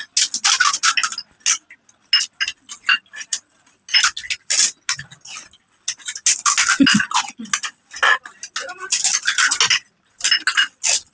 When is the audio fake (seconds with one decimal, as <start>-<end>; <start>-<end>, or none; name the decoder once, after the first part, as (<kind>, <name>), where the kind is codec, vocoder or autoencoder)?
none